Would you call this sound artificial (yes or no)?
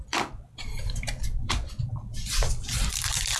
yes